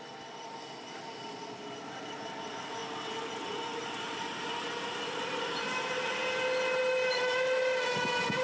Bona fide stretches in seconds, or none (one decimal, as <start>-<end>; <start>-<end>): 0.0-8.4